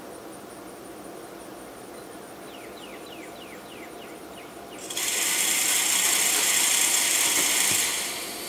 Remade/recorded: remade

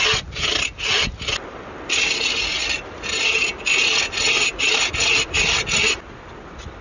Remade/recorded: recorded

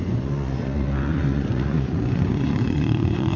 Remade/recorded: remade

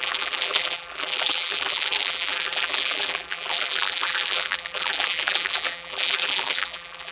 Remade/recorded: remade